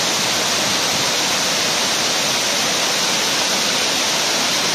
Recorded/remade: recorded